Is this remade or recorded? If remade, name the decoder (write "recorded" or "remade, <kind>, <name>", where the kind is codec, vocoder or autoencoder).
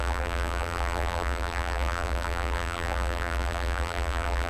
remade, vocoder, BigVGAN v2